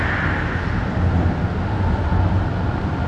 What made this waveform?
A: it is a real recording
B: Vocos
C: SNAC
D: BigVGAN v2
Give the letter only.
A